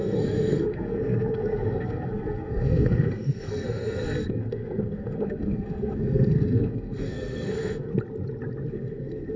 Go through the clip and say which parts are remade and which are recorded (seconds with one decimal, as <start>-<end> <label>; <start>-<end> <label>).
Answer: 0.0-7.9 remade; 7.9-8.7 recorded; 8.7-9.4 remade